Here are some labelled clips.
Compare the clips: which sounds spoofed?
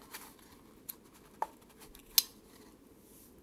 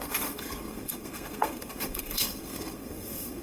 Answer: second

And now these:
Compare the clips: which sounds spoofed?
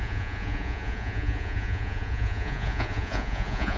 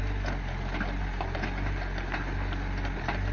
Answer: first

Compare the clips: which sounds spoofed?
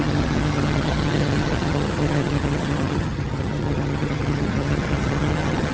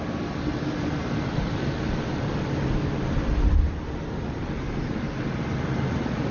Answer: first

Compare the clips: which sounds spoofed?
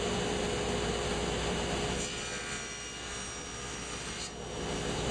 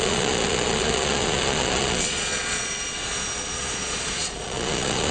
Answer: second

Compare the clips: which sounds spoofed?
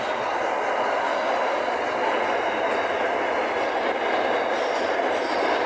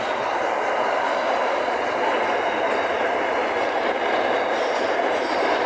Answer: second